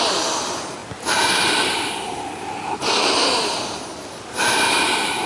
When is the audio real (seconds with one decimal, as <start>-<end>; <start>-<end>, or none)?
0.0-5.3